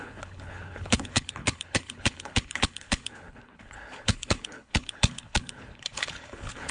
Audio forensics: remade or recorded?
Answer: remade